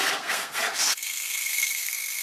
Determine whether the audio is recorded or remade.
remade